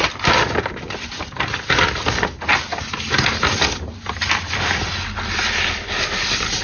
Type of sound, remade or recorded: recorded